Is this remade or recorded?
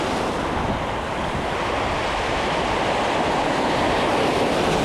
recorded